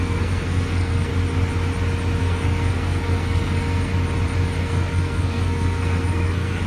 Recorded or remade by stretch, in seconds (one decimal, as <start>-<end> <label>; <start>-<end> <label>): 0.0-1.1 remade; 1.1-2.2 recorded; 2.2-3.9 remade; 3.9-4.6 recorded; 4.6-6.7 remade